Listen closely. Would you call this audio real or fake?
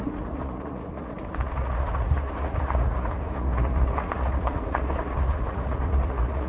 fake